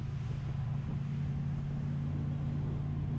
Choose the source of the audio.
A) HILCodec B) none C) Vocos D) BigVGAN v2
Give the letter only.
B